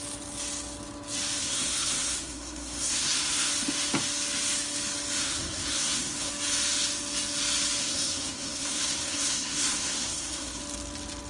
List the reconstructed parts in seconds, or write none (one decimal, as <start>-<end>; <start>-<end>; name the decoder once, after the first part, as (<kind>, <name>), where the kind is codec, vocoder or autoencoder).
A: 1.4-3.5 (codec, SNAC); 5.2-6.3; 7.8-10.6